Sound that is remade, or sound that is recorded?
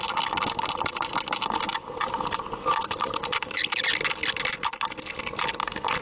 recorded